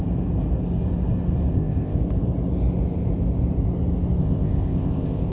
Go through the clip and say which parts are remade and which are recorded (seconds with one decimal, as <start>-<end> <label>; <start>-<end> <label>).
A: 0.0-1.5 recorded; 1.5-2.0 remade; 2.0-4.2 recorded; 4.2-5.3 remade